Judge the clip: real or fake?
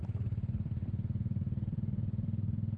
fake